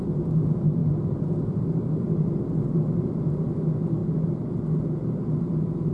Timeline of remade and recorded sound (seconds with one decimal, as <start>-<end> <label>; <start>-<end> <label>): 0.0-0.8 recorded; 0.8-1.8 remade; 1.8-4.0 recorded; 4.0-4.5 remade; 4.5-5.9 recorded